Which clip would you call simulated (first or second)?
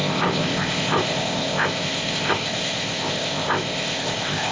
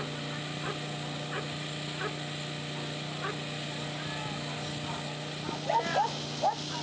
first